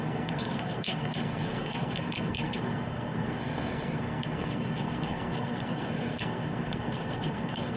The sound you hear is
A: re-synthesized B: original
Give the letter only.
A